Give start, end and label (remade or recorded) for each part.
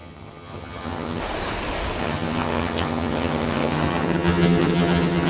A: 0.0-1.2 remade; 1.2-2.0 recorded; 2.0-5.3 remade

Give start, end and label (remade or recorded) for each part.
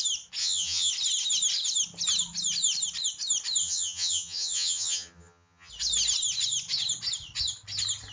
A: 0.0-0.4 recorded; 0.4-0.9 remade; 0.9-3.6 recorded; 3.6-5.7 remade; 5.7-8.1 recorded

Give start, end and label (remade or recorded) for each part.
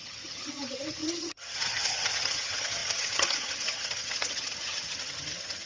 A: 0.0-5.7 remade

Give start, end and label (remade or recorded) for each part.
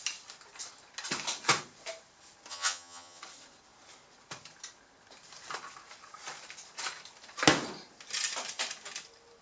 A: 0.0-2.5 recorded; 2.5-3.2 remade; 3.2-9.4 recorded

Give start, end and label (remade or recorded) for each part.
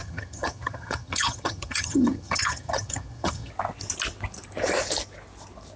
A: 0.0-3.5 remade; 3.5-5.8 recorded